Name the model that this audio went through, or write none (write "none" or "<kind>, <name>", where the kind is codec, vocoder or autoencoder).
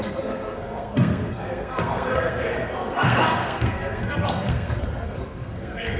codec, SNAC